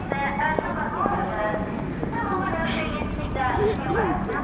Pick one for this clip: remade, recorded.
recorded